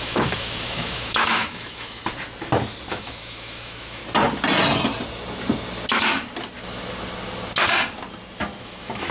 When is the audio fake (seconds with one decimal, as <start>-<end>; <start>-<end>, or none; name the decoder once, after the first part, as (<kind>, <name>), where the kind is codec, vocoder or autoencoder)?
0.0-2.0 (autoencoder, DAC-VAE); 2.9-4.0; 8.6-9.1